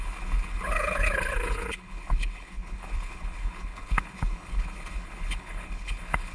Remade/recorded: remade